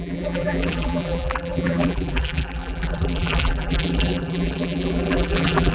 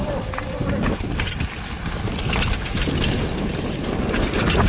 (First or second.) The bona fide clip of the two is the second